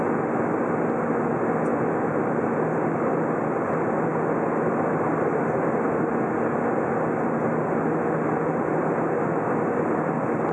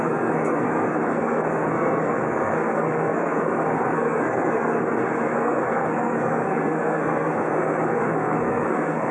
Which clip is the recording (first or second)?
first